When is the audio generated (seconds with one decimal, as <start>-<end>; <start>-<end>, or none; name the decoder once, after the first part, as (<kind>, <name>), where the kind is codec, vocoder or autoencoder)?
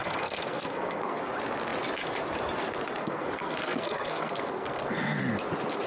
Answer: 0.0-1.2 (codec, SNAC); 3.0-5.2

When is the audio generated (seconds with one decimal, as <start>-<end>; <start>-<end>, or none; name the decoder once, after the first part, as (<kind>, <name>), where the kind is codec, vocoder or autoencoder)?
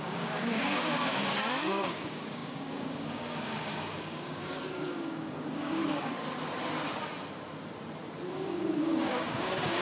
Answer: 0.0-5.8 (codec, DAC); 8.3-9.8